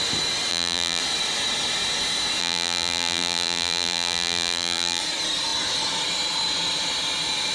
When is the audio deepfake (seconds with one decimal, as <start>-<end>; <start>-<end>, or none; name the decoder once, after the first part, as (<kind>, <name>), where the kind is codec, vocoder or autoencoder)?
0.5-1.0 (vocoder, BigVGAN v2); 2.4-5.0